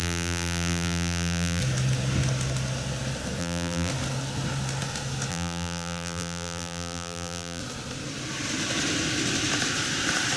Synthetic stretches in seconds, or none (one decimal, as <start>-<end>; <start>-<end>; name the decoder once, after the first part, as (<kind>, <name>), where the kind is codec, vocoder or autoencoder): 0.0-1.6 (vocoder, BigVGAN v2); 3.4-3.9; 5.3-7.6

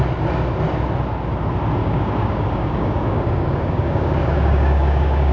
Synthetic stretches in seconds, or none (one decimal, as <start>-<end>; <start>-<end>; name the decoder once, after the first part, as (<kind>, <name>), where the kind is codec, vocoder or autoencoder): 1.8-5.3 (codec, DAC)

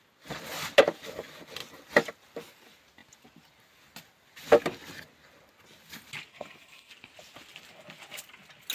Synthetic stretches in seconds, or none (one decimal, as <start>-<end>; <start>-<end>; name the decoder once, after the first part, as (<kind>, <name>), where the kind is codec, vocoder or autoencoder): 6.3-6.9 (codec, SNAC)

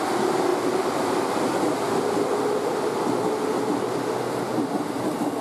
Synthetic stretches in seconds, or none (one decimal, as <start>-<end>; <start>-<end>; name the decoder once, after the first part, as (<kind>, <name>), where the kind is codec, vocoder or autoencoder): none

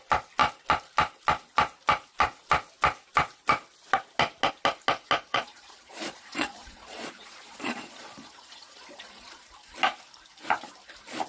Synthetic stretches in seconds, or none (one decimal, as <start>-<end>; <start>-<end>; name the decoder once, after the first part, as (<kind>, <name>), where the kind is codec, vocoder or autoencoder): 5.3-9.4 (vocoder, Vocos)